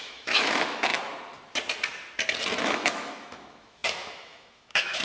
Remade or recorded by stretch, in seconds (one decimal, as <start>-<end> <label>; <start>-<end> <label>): 0.0-0.9 remade; 0.9-2.6 recorded; 2.6-5.0 remade